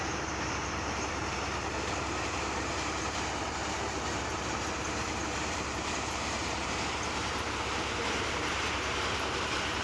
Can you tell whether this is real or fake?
fake